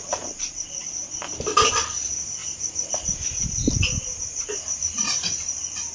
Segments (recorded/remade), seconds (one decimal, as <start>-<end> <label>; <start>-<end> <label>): 0.0-1.0 remade; 1.0-1.7 recorded; 1.7-5.9 remade